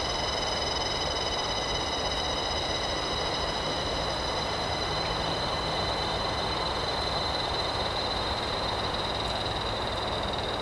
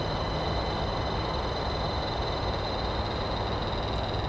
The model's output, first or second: first